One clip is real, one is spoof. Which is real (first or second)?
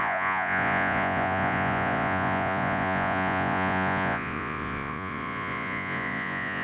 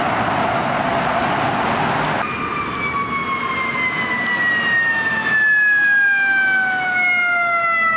second